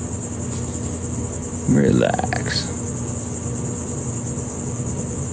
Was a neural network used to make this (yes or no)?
no